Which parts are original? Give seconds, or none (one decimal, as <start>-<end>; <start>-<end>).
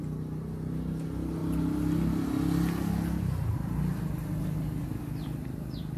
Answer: 0.0-6.0